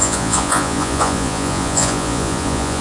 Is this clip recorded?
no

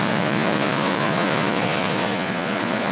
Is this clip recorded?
no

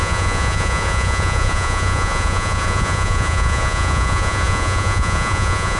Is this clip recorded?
no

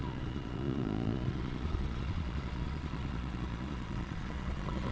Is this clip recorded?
no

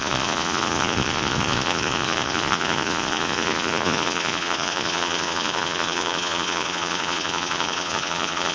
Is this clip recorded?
no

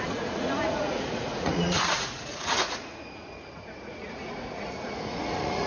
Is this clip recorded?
no